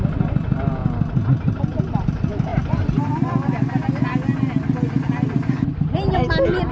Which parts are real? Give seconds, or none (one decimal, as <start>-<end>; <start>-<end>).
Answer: 0.0-6.7